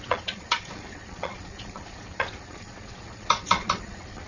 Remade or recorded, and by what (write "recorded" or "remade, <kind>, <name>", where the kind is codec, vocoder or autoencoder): remade, vocoder, Vocos